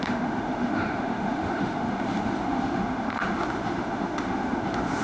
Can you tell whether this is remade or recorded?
remade